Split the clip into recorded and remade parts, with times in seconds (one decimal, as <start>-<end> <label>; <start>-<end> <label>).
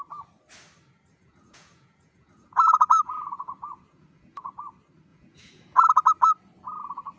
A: 0.0-1.1 recorded; 1.1-4.5 remade; 4.5-5.1 recorded; 5.1-5.8 remade; 5.8-7.2 recorded